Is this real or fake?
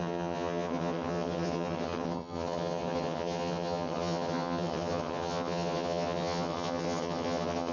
fake